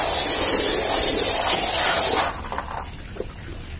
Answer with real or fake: real